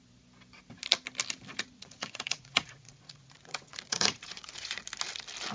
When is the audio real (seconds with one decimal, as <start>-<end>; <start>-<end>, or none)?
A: 0.0-1.5; 4.8-5.5